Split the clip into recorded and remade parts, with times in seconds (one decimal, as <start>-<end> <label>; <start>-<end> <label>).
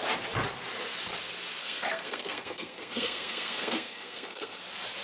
0.0-1.6 recorded; 1.6-4.6 remade; 4.6-5.0 recorded